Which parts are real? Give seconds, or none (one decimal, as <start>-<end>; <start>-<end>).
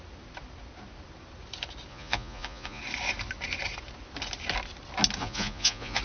0.0-1.9; 2.8-5.2